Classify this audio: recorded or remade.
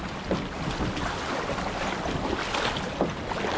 recorded